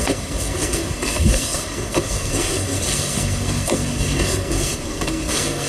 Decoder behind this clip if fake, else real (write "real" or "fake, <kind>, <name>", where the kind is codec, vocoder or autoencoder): fake, codec, SNAC